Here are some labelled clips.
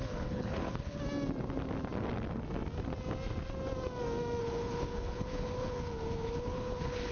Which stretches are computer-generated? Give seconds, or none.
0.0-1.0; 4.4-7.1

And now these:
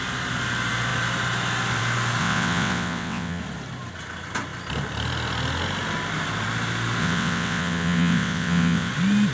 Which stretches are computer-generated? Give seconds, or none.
2.2-3.4; 7.0-8.9